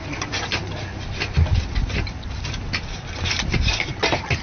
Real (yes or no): yes